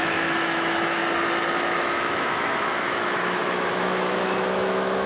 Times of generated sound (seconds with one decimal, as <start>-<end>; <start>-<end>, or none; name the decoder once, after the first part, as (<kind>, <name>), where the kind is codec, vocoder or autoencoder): 0.0-1.0 (autoencoder, DAC-VAE); 1.6-5.1